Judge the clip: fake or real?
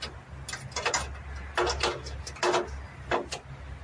real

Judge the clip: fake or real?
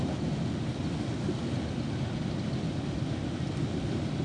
real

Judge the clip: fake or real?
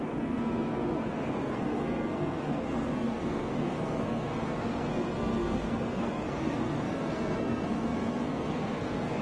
fake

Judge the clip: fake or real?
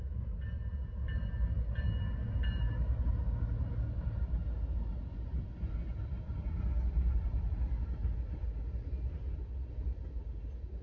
real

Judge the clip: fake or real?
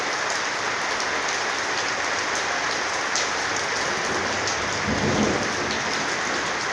real